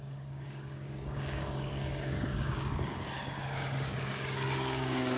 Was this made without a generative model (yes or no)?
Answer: no